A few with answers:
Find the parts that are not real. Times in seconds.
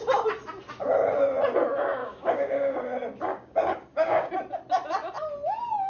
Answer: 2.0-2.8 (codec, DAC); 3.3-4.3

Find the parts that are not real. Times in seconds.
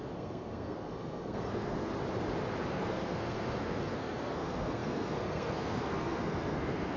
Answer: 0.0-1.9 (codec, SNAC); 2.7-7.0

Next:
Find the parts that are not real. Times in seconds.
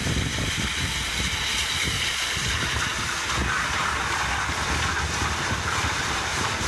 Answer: none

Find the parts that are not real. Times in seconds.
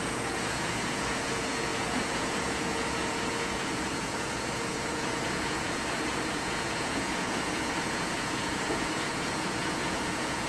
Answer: 0.0-10.5 (vocoder, Vocos)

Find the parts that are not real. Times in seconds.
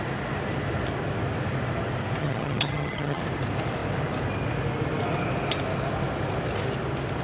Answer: 2.2-3.2 (vocoder, HiFi-GAN)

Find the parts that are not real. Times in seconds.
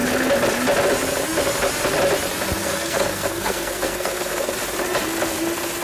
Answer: 2.6-4.5 (codec, SNAC)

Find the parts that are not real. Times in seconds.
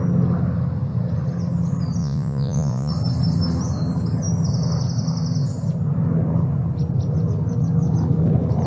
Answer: 2.0-2.9 (vocoder, Vocos)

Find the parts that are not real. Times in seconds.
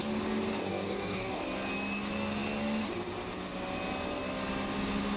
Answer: 0.6-1.4 (codec, DAC)